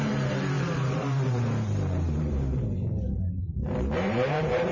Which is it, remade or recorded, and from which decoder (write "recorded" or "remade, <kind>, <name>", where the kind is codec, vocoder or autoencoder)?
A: remade, vocoder, BigVGAN v2